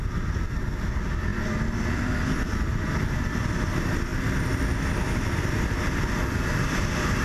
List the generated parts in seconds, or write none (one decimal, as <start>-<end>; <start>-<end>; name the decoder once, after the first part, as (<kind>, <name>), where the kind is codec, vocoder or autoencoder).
none